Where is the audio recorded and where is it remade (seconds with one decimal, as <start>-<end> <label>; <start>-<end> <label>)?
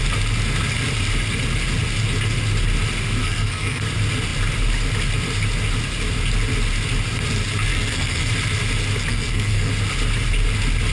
0.0-3.2 recorded; 3.2-3.8 remade; 3.8-7.7 recorded; 7.7-8.3 remade; 8.3-9.1 recorded; 9.1-9.7 remade; 9.7-10.9 recorded